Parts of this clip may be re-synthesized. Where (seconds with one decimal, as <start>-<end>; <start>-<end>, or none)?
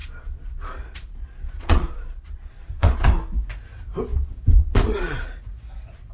0.0-3.1; 4.1-5.4